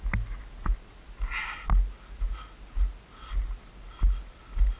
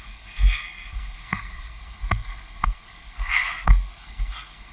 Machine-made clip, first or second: second